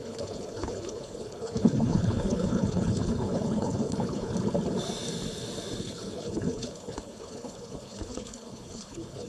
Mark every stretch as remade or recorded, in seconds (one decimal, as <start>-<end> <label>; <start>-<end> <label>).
0.0-4.3 remade; 4.3-5.8 recorded; 5.8-9.3 remade